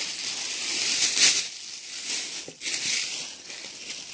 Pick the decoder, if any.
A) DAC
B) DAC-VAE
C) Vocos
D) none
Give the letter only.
D